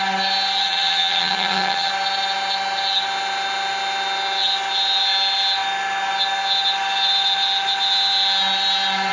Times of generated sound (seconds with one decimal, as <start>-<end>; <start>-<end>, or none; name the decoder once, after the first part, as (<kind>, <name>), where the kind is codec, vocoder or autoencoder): 0.6-1.9 (vocoder, HiFi-GAN)